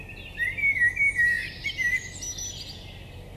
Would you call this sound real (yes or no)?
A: yes